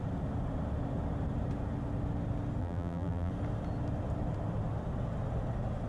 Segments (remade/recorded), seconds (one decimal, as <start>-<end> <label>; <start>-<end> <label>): 0.0-2.6 recorded; 2.6-3.3 remade; 3.3-5.9 recorded

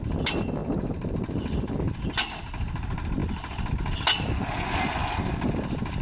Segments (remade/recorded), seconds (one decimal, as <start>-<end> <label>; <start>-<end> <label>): 0.0-0.6 recorded; 0.6-1.7 remade; 1.7-3.2 recorded; 3.2-3.7 remade; 3.7-5.0 recorded; 5.0-6.0 remade

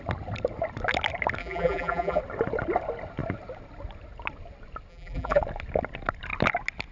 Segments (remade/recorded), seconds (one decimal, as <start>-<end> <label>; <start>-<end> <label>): 0.0-1.4 recorded; 1.4-2.2 remade; 2.2-4.9 recorded; 4.9-5.4 remade; 5.4-6.9 recorded

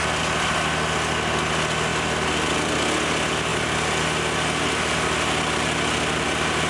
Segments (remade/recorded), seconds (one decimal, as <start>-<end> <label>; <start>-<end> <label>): 0.0-6.7 recorded

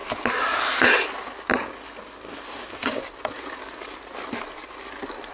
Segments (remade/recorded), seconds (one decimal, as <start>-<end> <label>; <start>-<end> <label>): 0.0-0.6 remade; 0.6-2.8 recorded; 2.8-5.3 remade

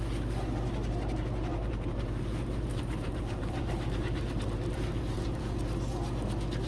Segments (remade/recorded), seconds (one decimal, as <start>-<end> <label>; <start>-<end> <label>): 0.0-1.4 recorded; 1.4-5.4 remade; 5.4-6.7 recorded

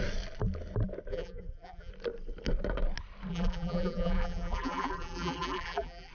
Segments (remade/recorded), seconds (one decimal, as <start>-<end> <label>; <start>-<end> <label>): 0.0-1.1 recorded; 1.1-1.9 remade; 1.9-3.3 recorded; 3.3-6.1 remade